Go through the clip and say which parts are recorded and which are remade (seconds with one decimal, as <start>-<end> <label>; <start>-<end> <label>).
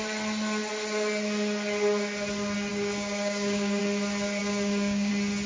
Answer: 0.0-2.7 recorded; 2.7-3.8 remade; 3.8-4.4 recorded; 4.4-5.1 remade; 5.1-5.5 recorded